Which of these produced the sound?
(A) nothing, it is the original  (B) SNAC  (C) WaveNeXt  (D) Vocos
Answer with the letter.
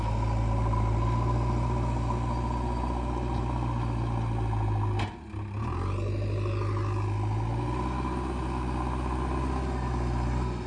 A